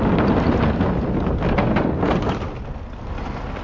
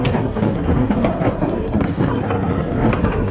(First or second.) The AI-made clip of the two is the second